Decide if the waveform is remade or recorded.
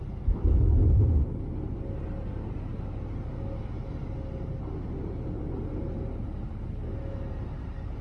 recorded